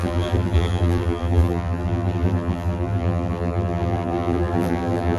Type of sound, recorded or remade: remade